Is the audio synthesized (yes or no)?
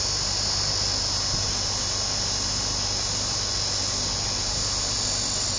no